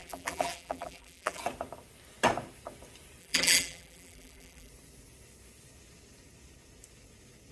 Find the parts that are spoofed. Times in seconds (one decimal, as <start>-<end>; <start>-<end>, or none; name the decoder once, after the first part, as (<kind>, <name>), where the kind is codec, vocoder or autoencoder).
0.0-1.4 (vocoder, BigVGAN v2); 3.2-4.7